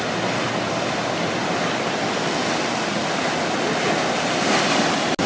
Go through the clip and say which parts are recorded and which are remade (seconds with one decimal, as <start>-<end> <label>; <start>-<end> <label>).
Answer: 0.0-5.3 recorded